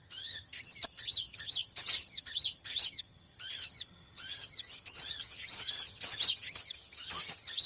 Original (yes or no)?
no